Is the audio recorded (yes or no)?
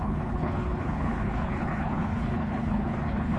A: no